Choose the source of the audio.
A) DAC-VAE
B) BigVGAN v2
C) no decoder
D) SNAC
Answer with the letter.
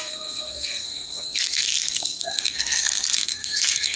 D